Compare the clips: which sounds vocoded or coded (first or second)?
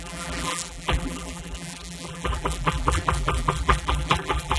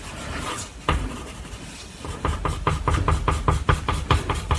first